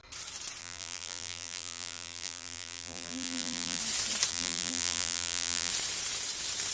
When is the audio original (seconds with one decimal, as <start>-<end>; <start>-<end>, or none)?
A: 0.0-0.6; 3.8-4.3; 5.7-6.7